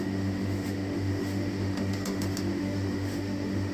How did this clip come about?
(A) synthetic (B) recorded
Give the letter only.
A